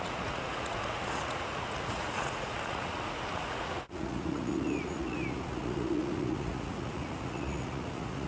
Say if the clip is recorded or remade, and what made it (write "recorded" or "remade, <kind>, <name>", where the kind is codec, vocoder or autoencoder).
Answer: remade, vocoder, Vocos